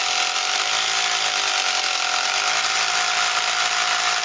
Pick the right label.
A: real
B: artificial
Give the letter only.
A